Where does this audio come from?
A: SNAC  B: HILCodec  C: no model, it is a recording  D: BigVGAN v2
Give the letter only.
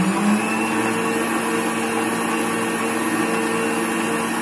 C